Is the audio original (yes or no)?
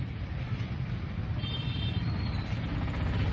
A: yes